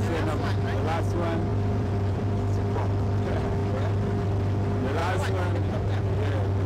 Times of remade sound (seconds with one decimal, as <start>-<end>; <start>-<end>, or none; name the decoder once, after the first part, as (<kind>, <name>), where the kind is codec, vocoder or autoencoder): 1.5-2.2 (vocoder, Vocos); 5.0-6.1